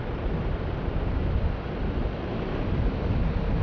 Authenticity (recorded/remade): recorded